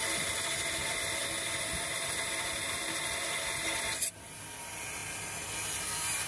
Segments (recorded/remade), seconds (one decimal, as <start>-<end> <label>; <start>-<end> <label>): 0.0-6.3 recorded